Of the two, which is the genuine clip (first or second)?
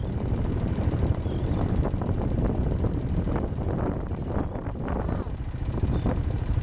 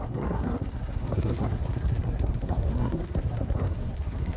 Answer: first